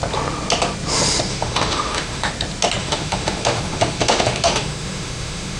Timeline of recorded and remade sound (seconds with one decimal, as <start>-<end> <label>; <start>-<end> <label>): 0.0-1.3 recorded; 1.3-2.3 remade; 2.3-2.8 recorded; 2.8-5.6 remade